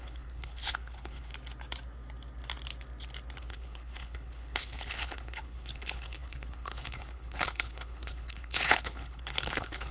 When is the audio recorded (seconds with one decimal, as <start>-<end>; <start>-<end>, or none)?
1.3-3.4